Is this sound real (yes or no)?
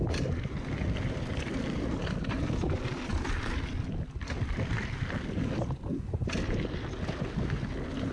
yes